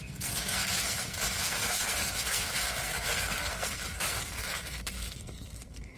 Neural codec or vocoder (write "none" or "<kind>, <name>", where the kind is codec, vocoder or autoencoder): codec, SNAC